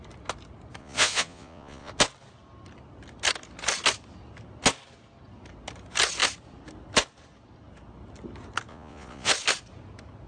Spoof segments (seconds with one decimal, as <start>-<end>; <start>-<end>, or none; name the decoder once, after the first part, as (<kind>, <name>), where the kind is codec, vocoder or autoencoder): 0.8-1.9 (vocoder, Vocos); 8.7-9.3